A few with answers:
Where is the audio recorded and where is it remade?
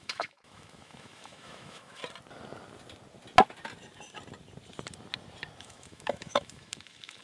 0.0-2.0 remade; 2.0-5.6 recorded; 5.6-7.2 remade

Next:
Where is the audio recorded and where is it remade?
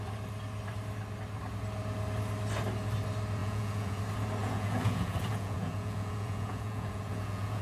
0.0-3.4 recorded; 3.4-4.0 remade; 4.0-4.4 recorded; 4.4-7.6 remade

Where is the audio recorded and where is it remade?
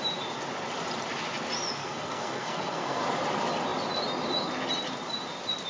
0.0-1.8 recorded; 1.8-3.0 remade; 3.0-5.7 recorded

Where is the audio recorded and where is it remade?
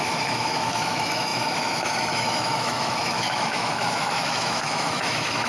0.0-5.5 remade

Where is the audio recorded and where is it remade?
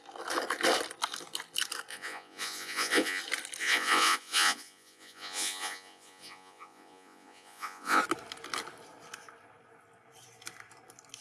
0.0-1.9 recorded; 1.9-3.2 remade; 3.2-3.6 recorded; 3.6-8.0 remade; 8.0-11.2 recorded